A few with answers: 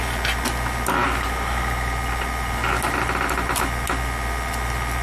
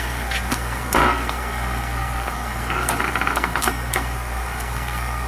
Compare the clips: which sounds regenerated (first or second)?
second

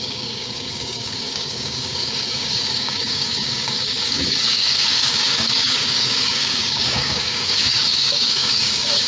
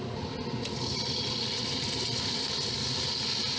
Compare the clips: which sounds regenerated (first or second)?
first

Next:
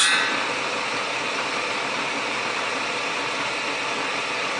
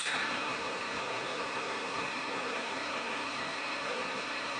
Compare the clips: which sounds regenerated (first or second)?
second